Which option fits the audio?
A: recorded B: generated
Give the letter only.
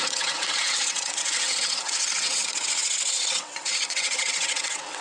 B